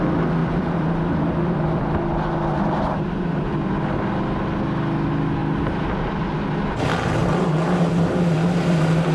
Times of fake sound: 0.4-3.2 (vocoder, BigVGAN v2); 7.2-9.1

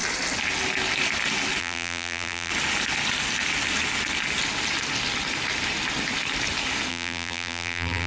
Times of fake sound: 1.6-2.5 (vocoder, BigVGAN v2); 6.9-8.1